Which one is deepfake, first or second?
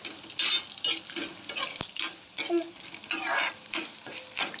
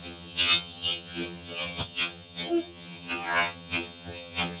second